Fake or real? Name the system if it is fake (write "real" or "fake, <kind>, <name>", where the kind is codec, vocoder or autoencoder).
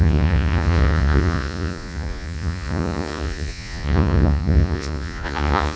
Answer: fake, vocoder, Vocos